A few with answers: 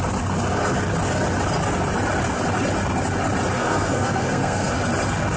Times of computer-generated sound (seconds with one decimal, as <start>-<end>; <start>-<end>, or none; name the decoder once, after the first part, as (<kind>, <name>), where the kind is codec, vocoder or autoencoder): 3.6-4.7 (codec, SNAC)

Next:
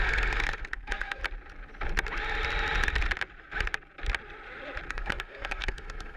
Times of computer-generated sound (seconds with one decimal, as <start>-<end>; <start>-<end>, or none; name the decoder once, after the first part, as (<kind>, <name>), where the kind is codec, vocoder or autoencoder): 0.0-1.2 (codec, SNAC); 4.9-6.2

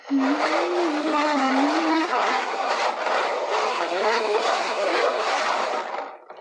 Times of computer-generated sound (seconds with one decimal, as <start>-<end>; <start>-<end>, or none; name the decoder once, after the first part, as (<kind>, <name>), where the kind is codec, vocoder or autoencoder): 1.0-1.5 (codec, SNAC); 1.9-2.7; 3.7-5.4

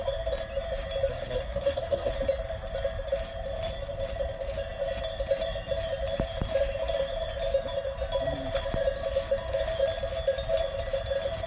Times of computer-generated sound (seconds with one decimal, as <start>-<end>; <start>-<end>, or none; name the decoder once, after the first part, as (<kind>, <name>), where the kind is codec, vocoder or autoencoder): 1.1-2.1 (codec, SNAC)

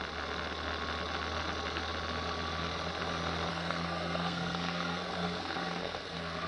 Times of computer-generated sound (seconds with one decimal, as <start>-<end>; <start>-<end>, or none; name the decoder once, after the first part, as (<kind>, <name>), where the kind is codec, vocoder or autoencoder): 3.5-6.5 (codec, SNAC)